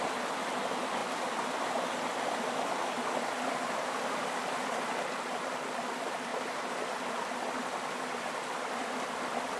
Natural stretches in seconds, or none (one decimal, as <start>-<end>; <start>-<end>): 0.0-6.3; 7.3-9.6